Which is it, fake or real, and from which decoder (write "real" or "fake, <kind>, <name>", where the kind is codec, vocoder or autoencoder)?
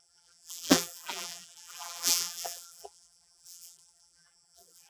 fake, vocoder, BigVGAN v2